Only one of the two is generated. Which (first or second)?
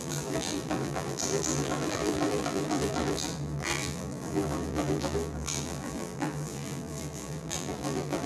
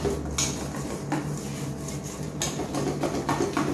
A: first